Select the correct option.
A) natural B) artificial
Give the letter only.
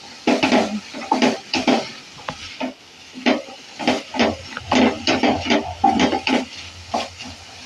A